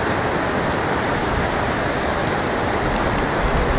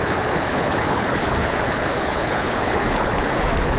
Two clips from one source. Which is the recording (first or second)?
first